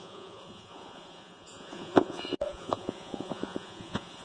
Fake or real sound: fake